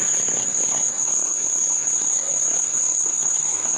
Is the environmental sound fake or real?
fake